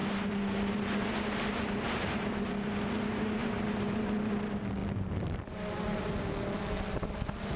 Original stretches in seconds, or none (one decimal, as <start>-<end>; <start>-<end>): 4.3-4.8; 6.1-7.6